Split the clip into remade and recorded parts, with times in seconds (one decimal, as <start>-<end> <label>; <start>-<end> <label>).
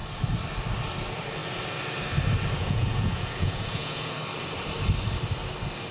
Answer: 0.0-2.6 recorded; 2.6-4.1 remade; 4.1-5.9 recorded